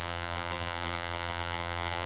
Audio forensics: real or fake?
fake